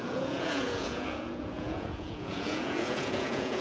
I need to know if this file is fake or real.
fake